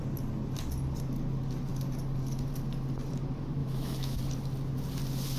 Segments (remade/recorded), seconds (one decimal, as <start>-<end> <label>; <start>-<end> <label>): 0.0-3.6 recorded; 3.6-4.2 remade; 4.2-5.4 recorded